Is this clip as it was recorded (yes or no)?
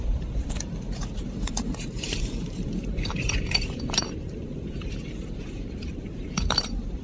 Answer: no